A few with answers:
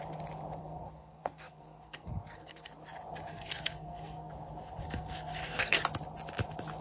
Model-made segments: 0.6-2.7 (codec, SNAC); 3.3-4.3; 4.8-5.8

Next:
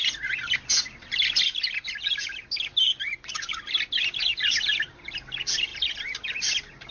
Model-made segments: none

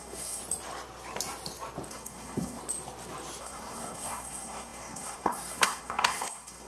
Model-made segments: 0.0-0.4 (codec, SNAC); 1.9-2.6; 3.4-6.7

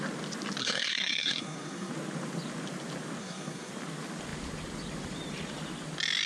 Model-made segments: 0.6-1.9 (codec, SNAC); 3.2-3.7